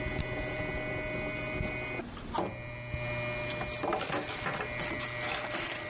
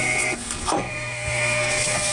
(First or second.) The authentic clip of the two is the first